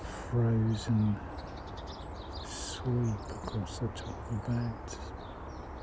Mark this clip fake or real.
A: real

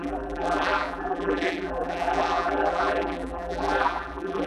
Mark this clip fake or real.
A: fake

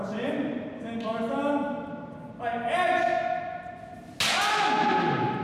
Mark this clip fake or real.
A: real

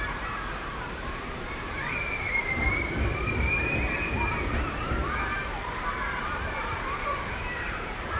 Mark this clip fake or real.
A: fake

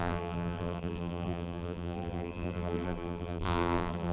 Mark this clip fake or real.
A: fake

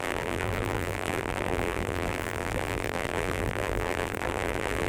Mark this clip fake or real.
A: fake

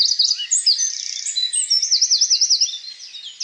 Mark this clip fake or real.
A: real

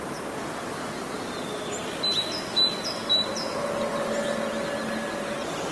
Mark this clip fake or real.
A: real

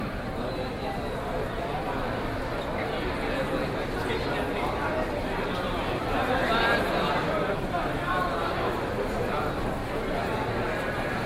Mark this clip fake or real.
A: real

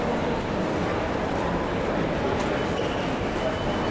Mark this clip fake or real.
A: fake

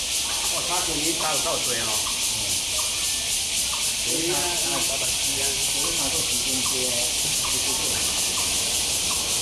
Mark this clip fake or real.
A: real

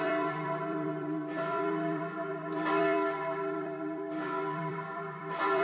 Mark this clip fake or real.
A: fake